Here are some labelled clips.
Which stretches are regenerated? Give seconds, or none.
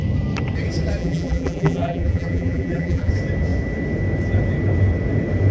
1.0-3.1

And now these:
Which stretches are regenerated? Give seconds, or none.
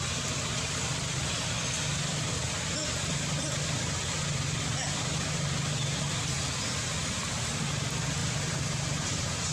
8.2-9.5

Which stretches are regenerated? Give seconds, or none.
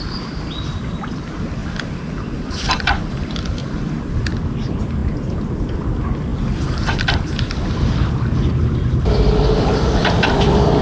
none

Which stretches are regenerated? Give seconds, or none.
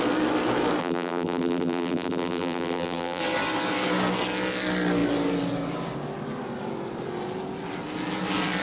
0.8-3.2